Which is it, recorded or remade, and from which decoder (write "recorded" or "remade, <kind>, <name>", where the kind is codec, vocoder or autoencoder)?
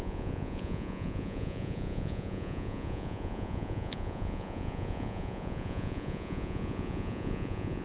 remade, vocoder, Vocos